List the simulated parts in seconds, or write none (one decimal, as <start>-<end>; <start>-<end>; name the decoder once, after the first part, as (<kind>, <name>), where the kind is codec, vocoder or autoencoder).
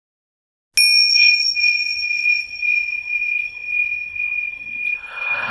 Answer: 1.1-5.5 (codec, HILCodec)